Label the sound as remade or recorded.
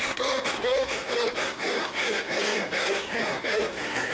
remade